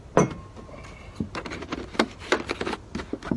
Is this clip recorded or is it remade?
recorded